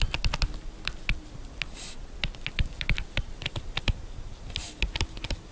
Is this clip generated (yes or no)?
no